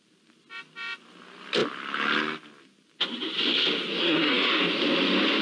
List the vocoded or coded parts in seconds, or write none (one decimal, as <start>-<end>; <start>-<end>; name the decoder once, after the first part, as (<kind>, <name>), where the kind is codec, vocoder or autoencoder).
4.0-4.5 (codec, SNAC)